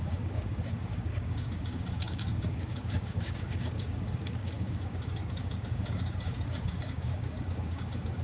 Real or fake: fake